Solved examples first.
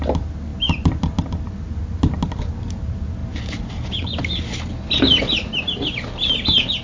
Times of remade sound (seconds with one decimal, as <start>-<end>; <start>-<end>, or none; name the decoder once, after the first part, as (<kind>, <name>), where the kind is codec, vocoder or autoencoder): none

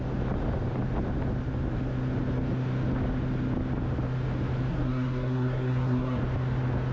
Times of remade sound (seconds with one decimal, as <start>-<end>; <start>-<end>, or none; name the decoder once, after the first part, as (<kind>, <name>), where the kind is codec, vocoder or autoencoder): 4.7-6.2 (codec, SNAC)

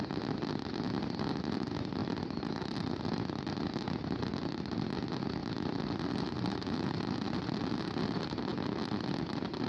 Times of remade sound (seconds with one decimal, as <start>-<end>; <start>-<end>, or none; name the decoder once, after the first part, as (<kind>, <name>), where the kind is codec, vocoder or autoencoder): none